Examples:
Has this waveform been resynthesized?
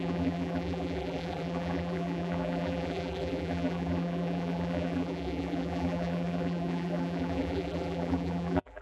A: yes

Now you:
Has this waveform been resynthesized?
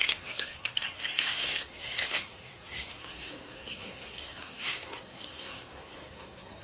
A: yes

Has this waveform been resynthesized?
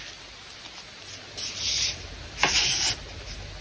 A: no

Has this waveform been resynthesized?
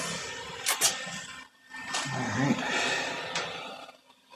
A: no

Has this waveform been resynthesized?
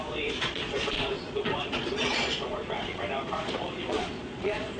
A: yes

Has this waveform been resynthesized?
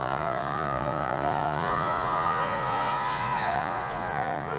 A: yes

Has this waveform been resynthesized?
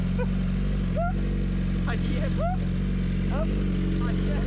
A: no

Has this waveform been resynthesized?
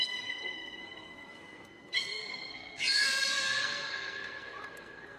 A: yes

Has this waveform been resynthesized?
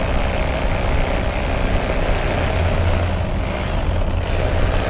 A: no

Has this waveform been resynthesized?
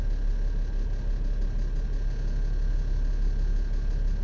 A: no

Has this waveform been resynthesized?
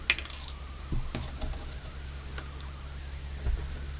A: no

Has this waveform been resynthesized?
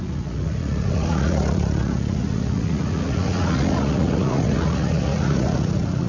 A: yes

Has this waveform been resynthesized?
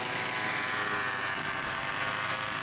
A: no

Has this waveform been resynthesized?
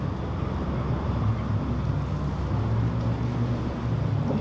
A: no